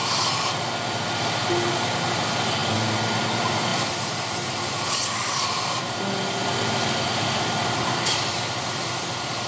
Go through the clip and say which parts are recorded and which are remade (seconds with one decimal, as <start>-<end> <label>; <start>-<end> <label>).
0.0-3.7 recorded; 3.7-8.9 remade; 8.9-9.5 recorded